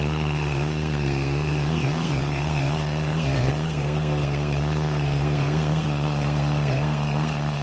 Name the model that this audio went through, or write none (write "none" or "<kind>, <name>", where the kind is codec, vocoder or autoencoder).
codec, SNAC